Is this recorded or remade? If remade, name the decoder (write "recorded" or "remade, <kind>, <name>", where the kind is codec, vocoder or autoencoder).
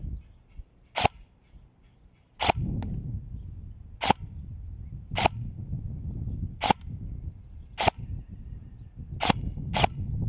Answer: recorded